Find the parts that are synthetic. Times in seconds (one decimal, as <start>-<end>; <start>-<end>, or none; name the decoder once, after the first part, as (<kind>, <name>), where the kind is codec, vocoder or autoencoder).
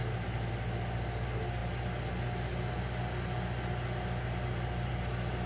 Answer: none